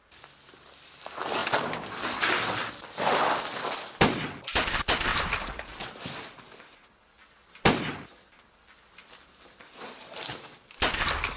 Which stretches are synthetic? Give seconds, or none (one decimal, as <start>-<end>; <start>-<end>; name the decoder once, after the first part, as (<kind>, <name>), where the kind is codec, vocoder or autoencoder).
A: 5.1-6.1 (vocoder, BigVGAN v2)

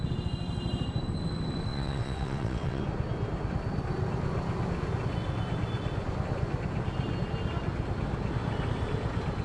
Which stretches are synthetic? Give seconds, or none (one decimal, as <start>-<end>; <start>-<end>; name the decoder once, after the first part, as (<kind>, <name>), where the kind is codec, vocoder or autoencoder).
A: 1.7-2.8 (vocoder, WaveNeXt)

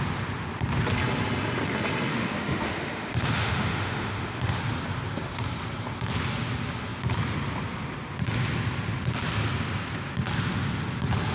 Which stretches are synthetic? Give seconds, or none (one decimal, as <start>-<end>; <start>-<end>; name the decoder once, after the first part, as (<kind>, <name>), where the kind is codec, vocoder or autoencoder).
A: 2.1-4.6 (autoencoder, DAC-VAE)

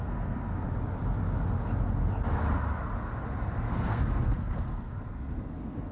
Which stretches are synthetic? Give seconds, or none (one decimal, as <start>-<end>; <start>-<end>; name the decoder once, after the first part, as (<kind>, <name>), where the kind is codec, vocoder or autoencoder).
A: 0.0-0.5 (codec, SNAC); 3.7-5.9

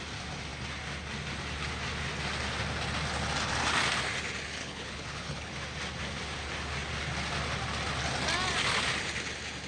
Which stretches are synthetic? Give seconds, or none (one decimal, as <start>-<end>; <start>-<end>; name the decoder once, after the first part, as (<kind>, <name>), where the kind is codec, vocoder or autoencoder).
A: 4.6-5.5 (codec, HILCodec)

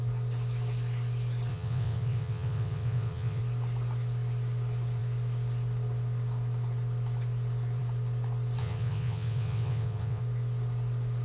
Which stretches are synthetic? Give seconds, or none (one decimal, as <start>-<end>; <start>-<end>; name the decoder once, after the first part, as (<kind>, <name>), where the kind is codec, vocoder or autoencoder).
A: 1.5-3.4 (vocoder, WaveNeXt); 8.6-10.2

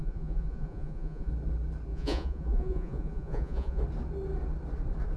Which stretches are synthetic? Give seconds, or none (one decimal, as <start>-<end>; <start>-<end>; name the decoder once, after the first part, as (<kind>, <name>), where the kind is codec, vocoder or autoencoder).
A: 0.0-1.3 (vocoder, Vocos); 1.9-3.8

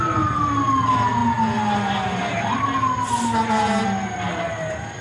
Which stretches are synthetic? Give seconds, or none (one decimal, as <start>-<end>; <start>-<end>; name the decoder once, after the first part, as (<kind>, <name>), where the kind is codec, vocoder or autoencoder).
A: none